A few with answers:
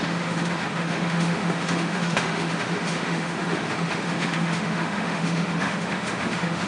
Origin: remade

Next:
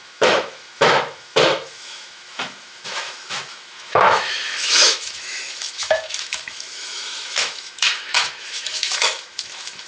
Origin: remade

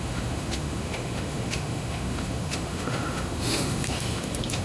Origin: remade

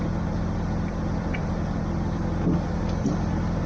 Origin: recorded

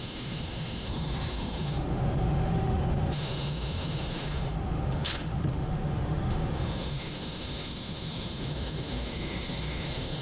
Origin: remade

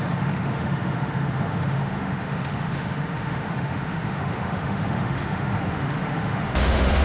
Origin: remade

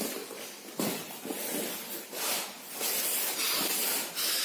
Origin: recorded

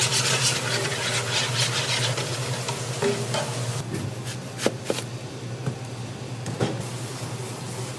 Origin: recorded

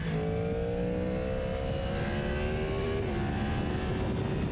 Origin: recorded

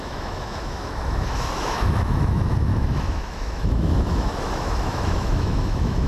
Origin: remade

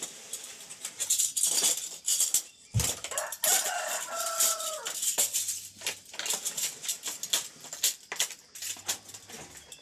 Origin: recorded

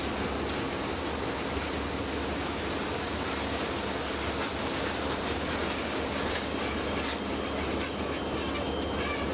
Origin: recorded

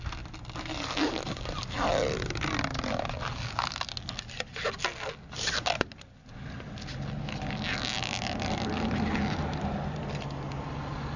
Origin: recorded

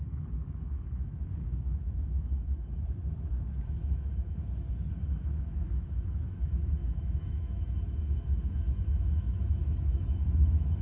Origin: remade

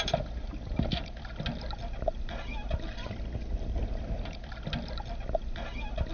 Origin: recorded